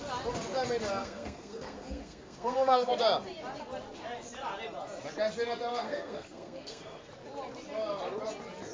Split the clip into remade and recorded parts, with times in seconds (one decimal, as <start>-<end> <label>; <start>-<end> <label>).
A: 0.0-1.0 recorded; 1.0-2.9 remade; 2.9-5.7 recorded; 5.7-7.1 remade; 7.1-8.7 recorded